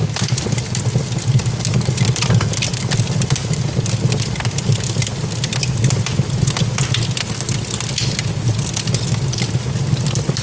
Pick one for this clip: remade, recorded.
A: recorded